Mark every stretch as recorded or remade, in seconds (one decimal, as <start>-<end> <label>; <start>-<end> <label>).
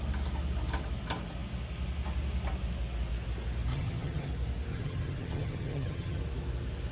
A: 0.0-3.7 recorded; 3.7-4.3 remade; 4.3-4.7 recorded; 4.7-6.2 remade; 6.2-6.9 recorded